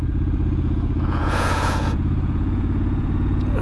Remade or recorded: remade